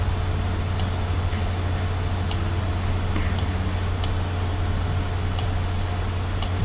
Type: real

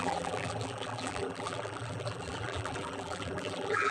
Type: fake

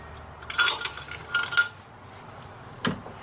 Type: real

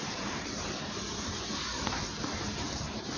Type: fake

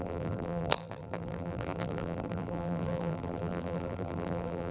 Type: fake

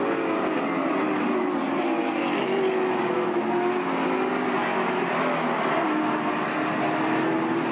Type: real